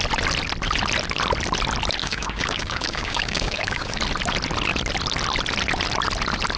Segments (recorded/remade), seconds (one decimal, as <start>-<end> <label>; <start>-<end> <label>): 0.0-2.0 recorded; 2.0-4.0 remade; 4.0-6.6 recorded